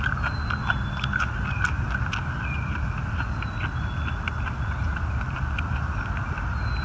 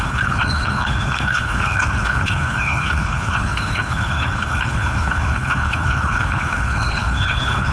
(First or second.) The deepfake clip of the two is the second